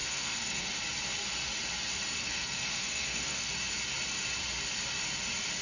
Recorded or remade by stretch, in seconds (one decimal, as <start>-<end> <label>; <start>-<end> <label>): 0.0-0.7 remade; 0.7-2.2 recorded; 2.2-3.5 remade; 3.5-5.6 recorded

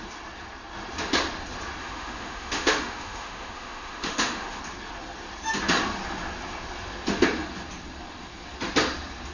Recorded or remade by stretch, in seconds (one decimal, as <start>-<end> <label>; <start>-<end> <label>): 0.0-1.8 recorded; 1.8-4.6 remade; 4.6-9.3 recorded

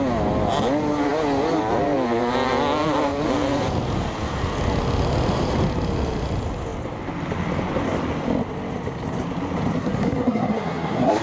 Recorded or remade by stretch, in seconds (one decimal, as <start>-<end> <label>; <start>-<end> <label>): 0.0-9.8 recorded; 9.8-11.2 remade

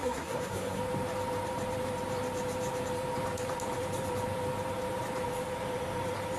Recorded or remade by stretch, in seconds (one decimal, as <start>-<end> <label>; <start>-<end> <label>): 0.0-0.8 remade; 0.8-6.4 recorded

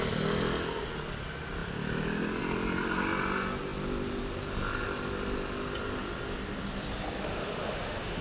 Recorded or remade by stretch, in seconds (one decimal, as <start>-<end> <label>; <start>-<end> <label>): 0.0-7.2 recorded; 7.2-8.2 remade

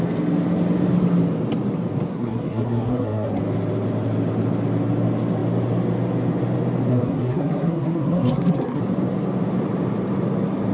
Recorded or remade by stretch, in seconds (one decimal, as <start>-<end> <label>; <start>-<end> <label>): 0.0-2.1 recorded; 2.1-3.4 remade; 3.4-6.9 recorded; 6.9-8.8 remade; 8.8-10.7 recorded

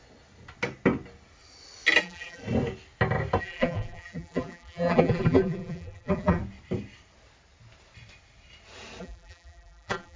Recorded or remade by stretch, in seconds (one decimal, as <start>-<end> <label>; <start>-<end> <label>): 0.0-2.0 recorded; 2.0-2.4 remade; 2.4-3.4 recorded; 3.4-6.4 remade; 6.4-9.0 recorded; 9.0-10.2 remade